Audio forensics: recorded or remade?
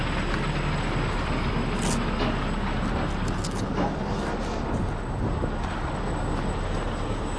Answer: recorded